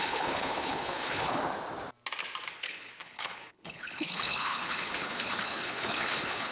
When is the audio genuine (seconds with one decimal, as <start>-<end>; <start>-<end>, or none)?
1.4-2.5